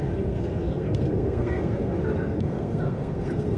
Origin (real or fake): fake